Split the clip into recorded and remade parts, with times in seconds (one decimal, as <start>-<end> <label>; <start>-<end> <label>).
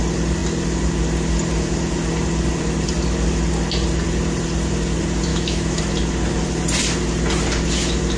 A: 0.0-5.3 recorded; 5.3-5.8 remade; 5.8-8.2 recorded